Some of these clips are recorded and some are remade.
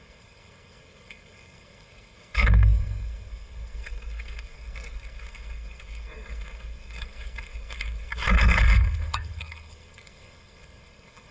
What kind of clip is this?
remade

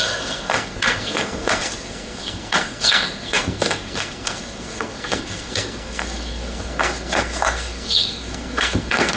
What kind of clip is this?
remade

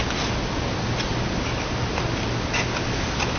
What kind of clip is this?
recorded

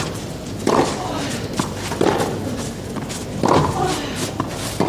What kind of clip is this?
remade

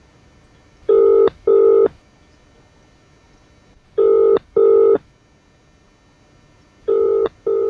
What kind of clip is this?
recorded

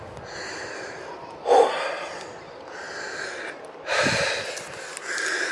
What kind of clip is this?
recorded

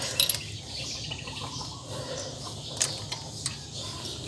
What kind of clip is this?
recorded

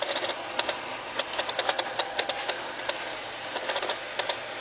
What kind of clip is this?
recorded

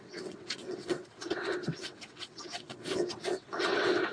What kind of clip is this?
remade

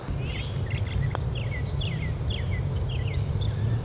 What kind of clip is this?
recorded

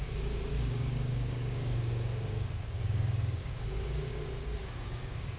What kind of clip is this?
remade